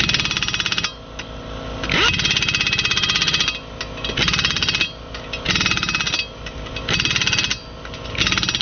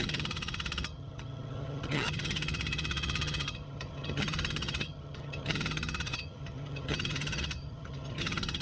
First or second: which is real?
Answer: first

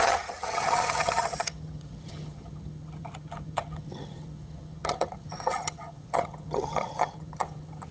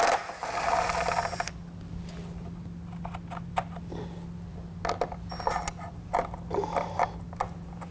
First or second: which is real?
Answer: second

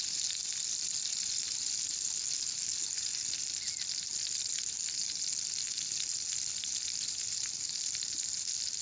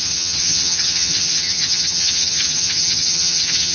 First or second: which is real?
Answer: first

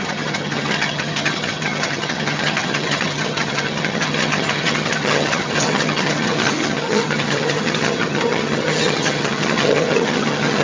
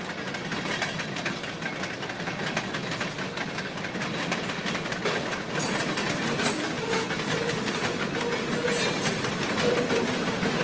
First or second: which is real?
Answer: second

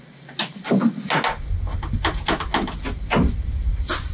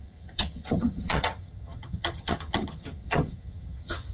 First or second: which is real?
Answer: first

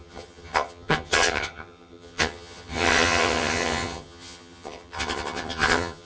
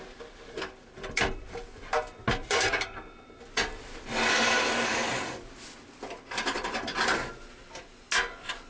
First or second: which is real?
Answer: second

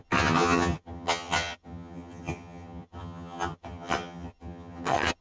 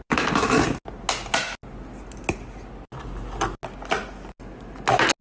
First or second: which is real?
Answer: second